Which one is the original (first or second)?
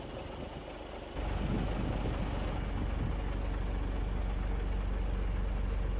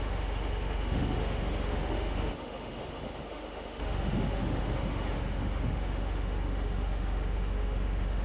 first